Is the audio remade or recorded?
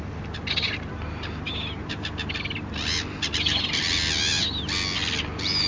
recorded